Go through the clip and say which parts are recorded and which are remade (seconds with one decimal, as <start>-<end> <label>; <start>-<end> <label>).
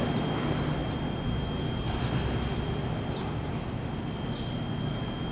0.0-5.3 recorded